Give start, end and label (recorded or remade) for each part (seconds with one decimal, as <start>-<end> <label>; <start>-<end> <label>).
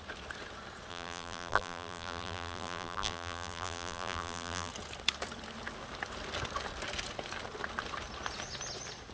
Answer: 0.0-0.9 recorded; 0.9-4.7 remade; 4.7-9.1 recorded